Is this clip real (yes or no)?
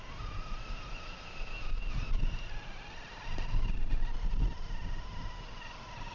yes